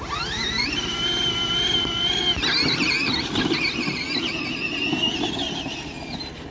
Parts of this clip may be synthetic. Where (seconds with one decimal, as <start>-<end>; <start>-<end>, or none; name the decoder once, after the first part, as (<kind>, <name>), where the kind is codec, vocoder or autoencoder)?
none